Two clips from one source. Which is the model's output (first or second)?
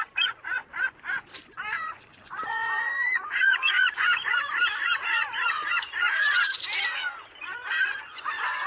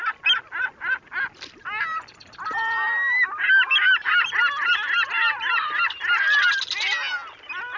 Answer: first